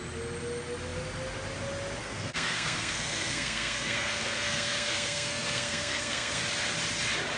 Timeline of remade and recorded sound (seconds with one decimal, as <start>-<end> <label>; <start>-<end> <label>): 0.0-2.0 recorded; 2.0-6.4 remade; 6.4-7.4 recorded